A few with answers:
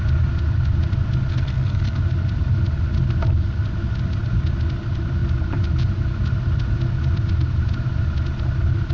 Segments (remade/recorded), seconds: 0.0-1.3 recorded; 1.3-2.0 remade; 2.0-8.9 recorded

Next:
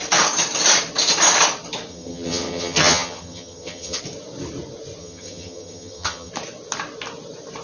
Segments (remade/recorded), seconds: 0.0-1.9 recorded; 1.9-4.0 remade; 4.0-5.0 recorded; 5.0-6.3 remade; 6.3-7.6 recorded